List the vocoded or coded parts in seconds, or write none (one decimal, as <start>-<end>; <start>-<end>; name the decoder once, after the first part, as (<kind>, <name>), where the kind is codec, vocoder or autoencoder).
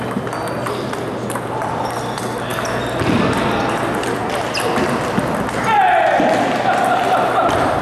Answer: none